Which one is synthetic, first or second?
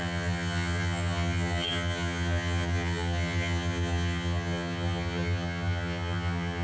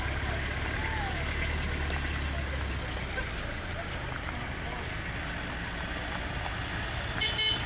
first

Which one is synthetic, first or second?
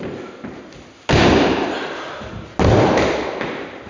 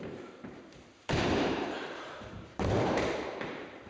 second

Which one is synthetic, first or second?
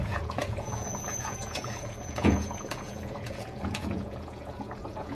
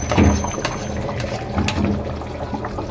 first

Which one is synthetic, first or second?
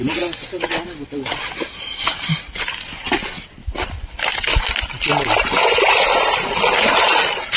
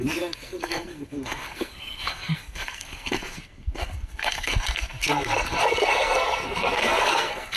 second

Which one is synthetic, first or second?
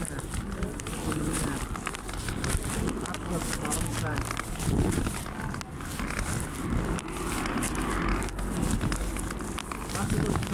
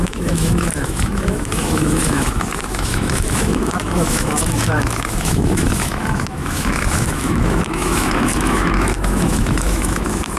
second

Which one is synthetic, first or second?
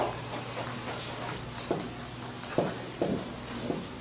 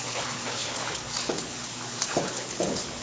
second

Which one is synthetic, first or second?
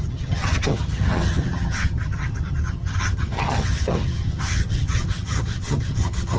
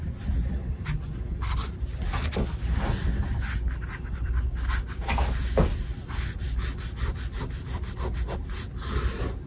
first